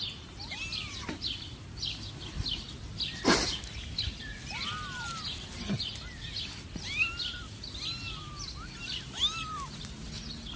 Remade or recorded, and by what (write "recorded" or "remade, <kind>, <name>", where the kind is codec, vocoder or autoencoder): recorded